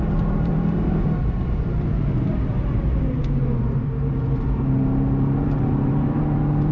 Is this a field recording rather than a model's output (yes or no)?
no